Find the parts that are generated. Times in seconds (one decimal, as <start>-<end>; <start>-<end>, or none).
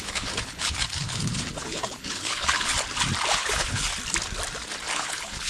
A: 0.0-2.7; 3.3-3.9; 4.9-5.5